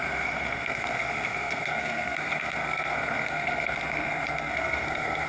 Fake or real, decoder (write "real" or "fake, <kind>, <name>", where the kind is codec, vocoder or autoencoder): fake, codec, SNAC